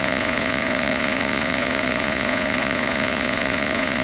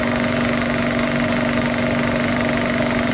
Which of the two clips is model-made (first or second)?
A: first